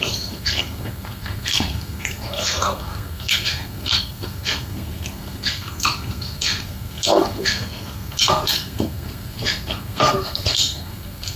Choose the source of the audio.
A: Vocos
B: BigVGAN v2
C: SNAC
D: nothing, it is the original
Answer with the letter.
C